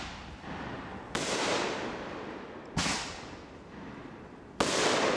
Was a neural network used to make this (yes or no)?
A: no